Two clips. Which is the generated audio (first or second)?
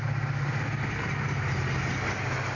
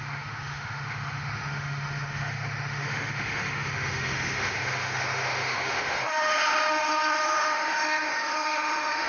second